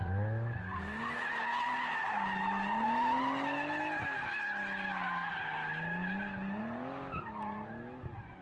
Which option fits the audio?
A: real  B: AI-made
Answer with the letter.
A